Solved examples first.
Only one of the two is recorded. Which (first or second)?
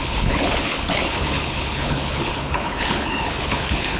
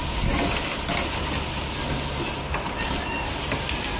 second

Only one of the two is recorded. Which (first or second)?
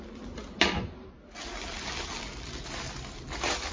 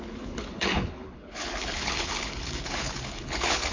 first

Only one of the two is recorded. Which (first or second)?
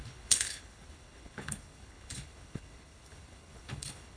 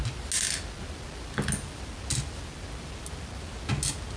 second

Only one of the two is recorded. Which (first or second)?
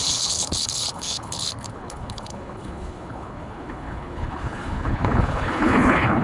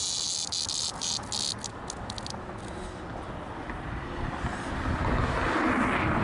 second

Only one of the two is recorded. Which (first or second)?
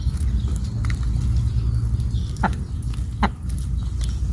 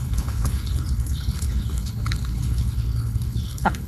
first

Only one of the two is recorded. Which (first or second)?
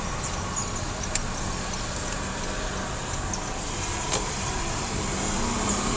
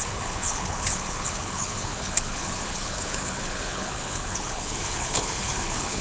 first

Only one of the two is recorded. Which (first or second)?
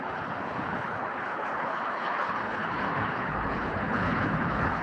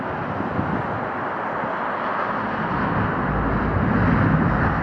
second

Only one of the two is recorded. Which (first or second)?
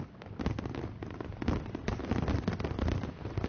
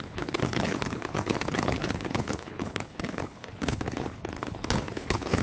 first